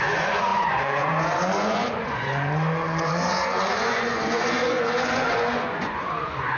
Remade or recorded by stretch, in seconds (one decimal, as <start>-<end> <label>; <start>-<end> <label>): 0.0-6.6 remade